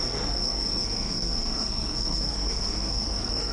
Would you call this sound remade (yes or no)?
yes